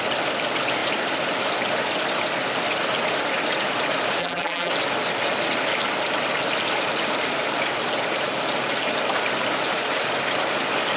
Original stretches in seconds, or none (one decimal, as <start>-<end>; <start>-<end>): 0.0-4.2; 4.7-11.0